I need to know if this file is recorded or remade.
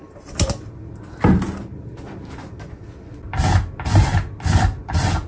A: recorded